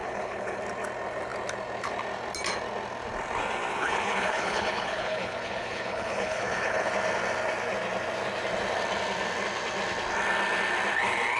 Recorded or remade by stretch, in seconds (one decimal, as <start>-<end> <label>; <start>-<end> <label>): 0.0-0.6 remade; 0.6-3.7 recorded; 3.7-6.9 remade; 6.9-11.4 recorded